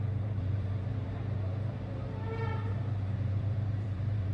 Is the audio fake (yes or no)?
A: yes